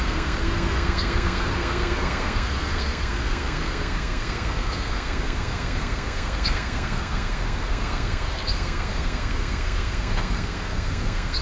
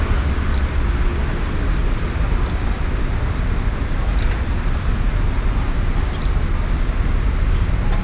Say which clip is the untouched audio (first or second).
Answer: second